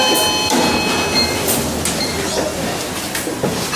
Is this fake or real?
real